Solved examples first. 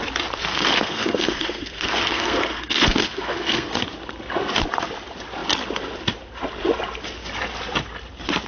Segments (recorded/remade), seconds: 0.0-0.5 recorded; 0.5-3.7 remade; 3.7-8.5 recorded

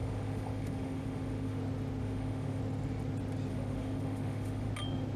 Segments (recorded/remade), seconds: 0.0-1.6 remade; 1.6-2.0 recorded; 2.0-2.6 remade; 2.6-3.5 recorded; 3.5-4.7 remade; 4.7-5.2 recorded

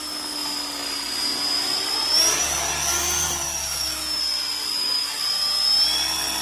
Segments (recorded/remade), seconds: 0.0-3.6 recorded; 3.6-4.2 remade; 4.2-4.7 recorded; 4.7-5.2 remade; 5.2-6.4 recorded

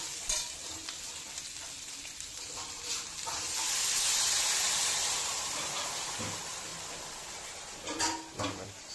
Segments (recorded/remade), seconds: 0.0-6.7 remade; 6.7-8.5 recorded; 8.5-8.9 remade

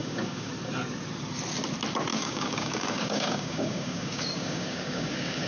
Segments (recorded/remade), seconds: 0.0-0.5 remade; 0.5-2.1 recorded; 2.1-5.5 remade

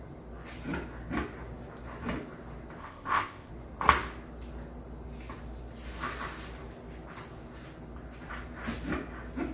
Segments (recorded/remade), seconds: 0.0-2.8 recorded; 2.8-3.5 remade; 3.5-9.5 recorded

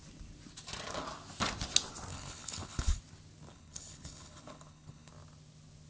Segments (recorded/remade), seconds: 0.0-2.1 recorded; 2.1-3.0 remade; 3.0-3.5 recorded; 3.5-5.1 remade; 5.1-5.9 recorded

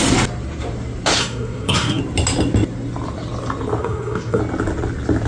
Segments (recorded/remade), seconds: 0.0-1.2 recorded; 1.2-2.0 remade; 2.0-3.8 recorded; 3.8-4.4 remade; 4.4-5.3 recorded